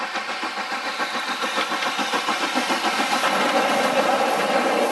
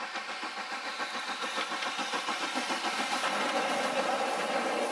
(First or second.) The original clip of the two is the second